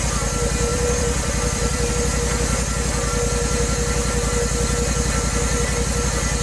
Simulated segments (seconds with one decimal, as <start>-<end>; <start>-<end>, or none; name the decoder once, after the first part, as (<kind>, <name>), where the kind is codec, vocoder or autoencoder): 0.7-1.9 (vocoder, BigVGAN v2)